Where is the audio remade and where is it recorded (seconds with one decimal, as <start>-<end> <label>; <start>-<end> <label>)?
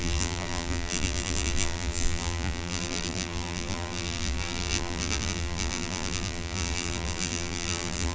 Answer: 0.0-8.1 remade